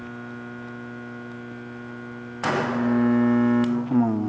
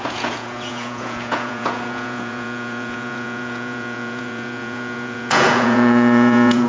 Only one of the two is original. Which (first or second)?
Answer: first